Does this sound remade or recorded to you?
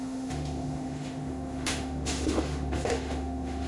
remade